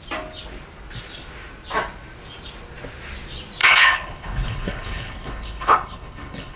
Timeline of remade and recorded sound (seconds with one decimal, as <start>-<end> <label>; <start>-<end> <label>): 0.0-3.6 recorded; 3.6-6.6 remade